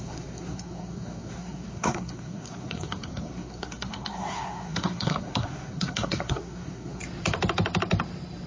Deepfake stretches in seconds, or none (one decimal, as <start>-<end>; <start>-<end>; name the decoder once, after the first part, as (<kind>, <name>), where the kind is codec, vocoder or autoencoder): 0.0-7.0 (codec, SNAC)